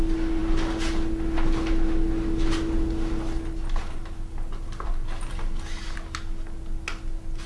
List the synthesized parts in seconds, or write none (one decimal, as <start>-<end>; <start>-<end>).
none